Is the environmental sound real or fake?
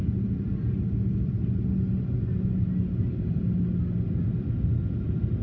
real